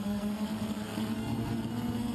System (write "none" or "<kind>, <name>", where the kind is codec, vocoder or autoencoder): codec, SNAC